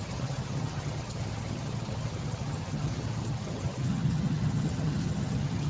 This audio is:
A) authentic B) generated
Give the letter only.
B